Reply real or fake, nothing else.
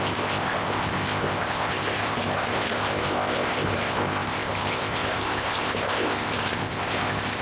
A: fake